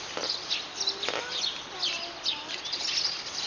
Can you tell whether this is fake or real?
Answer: real